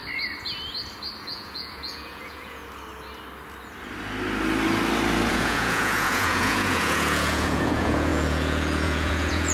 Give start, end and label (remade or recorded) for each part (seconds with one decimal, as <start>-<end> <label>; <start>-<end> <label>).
0.0-1.2 recorded; 1.2-2.6 remade; 2.6-5.3 recorded; 5.3-9.5 remade